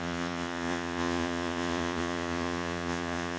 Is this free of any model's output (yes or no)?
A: no